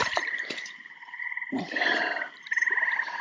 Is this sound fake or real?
real